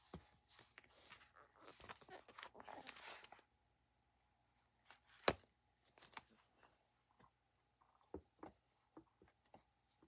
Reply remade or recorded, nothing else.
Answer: recorded